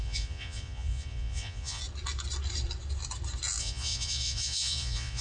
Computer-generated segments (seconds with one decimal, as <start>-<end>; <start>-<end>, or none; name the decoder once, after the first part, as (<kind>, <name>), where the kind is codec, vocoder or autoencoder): 0.0-1.8 (vocoder, Vocos); 3.6-5.2